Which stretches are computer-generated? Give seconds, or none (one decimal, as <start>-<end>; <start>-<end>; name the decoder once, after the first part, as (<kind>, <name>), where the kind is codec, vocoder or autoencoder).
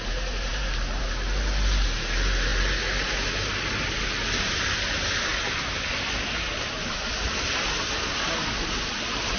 none